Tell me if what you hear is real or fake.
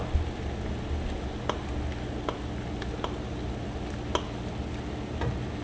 real